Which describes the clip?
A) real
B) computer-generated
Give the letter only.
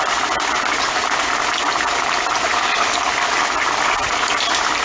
A